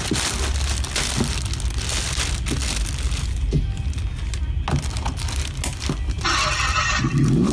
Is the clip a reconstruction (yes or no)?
no